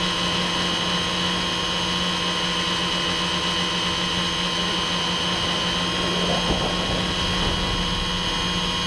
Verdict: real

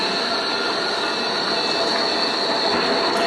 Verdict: real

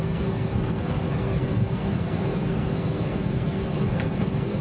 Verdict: fake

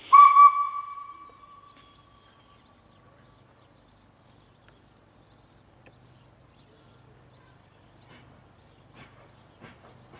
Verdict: real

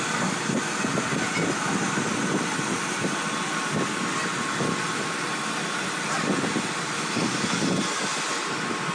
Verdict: real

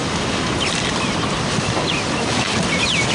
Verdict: real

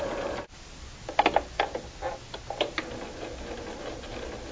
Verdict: real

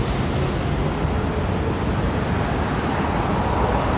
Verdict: real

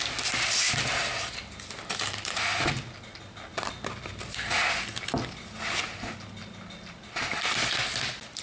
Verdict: real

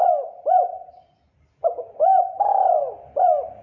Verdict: real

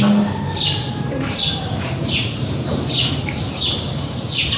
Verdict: fake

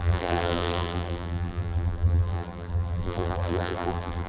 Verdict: fake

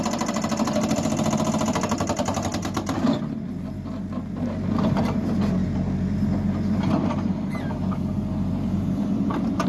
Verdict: real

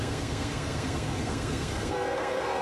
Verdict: fake